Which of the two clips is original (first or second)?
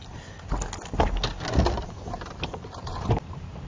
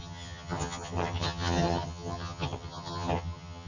first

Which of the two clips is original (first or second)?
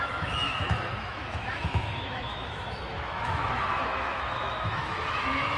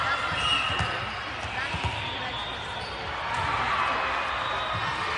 second